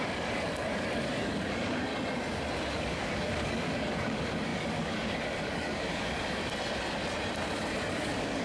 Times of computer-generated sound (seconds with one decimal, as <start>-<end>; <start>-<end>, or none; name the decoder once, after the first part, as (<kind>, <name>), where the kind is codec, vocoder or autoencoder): 0.0-1.9 (codec, DAC); 2.7-6.4; 7.9-8.4